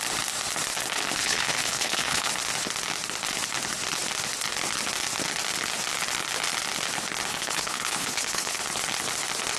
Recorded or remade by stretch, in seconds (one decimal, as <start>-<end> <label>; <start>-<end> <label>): 0.0-1.2 recorded; 1.2-2.3 remade; 2.3-7.3 recorded; 7.3-8.6 remade; 8.6-9.6 recorded